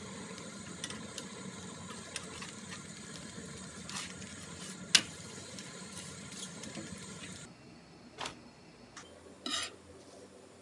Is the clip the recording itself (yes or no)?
yes